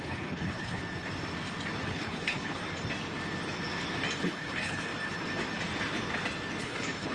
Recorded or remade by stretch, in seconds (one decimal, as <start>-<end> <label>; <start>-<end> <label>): 0.0-0.8 remade; 0.8-1.9 recorded; 1.9-2.6 remade; 2.6-4.2 recorded; 4.2-4.9 remade; 4.9-6.6 recorded; 6.6-7.1 remade